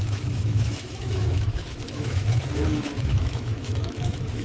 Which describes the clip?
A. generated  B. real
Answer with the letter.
A